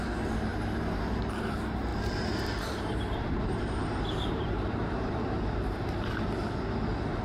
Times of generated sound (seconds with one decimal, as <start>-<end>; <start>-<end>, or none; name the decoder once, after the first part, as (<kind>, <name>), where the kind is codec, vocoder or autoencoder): 0.5-1.3 (vocoder, BigVGAN v2); 1.9-6.2